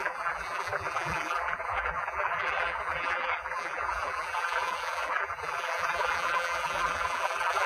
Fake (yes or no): yes